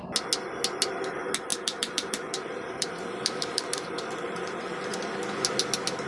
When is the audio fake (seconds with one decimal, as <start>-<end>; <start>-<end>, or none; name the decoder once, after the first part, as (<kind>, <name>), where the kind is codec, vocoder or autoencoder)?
1.5-5.2 (vocoder, BigVGAN v2)